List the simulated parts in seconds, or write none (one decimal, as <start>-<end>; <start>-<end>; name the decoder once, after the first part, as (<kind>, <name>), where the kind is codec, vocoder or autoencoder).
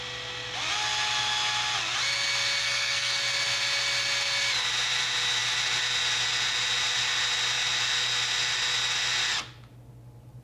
2.6-3.2 (codec, SNAC)